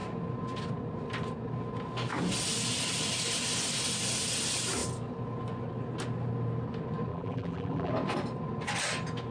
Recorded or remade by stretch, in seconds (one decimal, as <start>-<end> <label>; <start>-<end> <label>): 0.0-7.1 recorded; 7.1-7.9 remade; 7.9-9.3 recorded